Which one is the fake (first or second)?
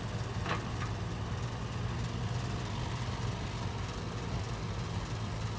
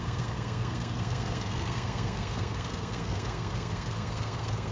second